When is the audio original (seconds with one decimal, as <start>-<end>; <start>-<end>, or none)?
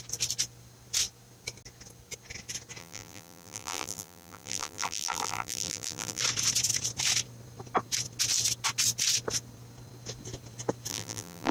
0.0-2.8; 6.2-10.9